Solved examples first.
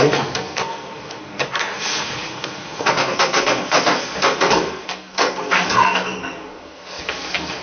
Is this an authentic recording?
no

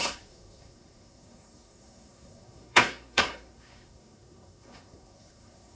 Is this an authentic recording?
no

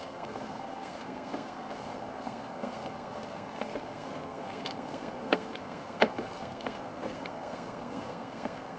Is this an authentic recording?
no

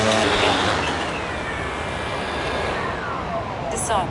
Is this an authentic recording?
yes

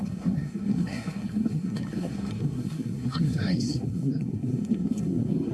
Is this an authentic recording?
no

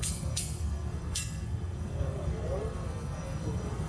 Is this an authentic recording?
no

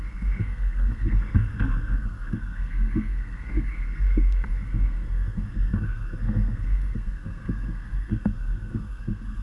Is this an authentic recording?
no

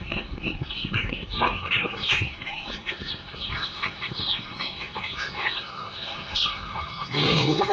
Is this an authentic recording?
no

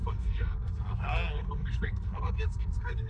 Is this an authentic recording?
no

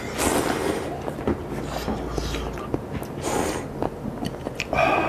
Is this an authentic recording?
yes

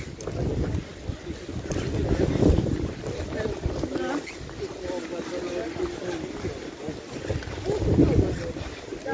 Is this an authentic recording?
yes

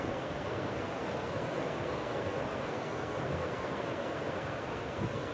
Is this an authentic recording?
no